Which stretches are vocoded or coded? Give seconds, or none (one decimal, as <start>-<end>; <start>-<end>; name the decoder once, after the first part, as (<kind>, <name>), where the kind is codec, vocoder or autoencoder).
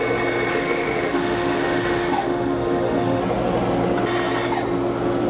0.5-3.2 (autoencoder, DAC-VAE)